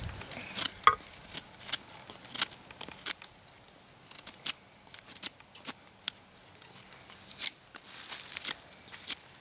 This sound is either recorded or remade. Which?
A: recorded